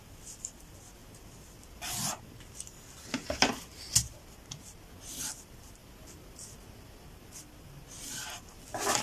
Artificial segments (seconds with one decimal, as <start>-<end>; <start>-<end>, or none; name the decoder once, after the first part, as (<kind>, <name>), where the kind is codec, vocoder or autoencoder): none